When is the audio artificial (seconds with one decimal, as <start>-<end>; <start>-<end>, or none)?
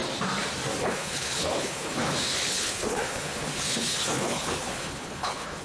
0.8-5.6